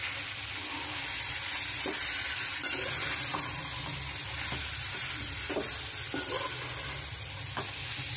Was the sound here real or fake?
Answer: real